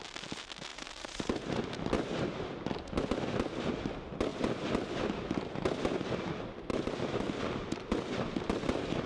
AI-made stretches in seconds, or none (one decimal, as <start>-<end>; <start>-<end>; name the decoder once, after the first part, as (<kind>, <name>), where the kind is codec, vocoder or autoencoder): 6.7-7.4 (vocoder, BigVGAN v2)